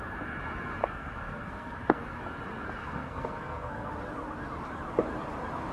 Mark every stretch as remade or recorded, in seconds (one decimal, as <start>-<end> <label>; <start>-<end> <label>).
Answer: 0.0-0.8 recorded; 0.8-2.2 remade; 2.2-2.8 recorded; 2.8-3.9 remade; 3.9-5.7 recorded